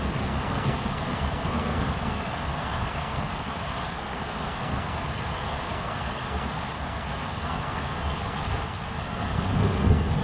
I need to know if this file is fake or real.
fake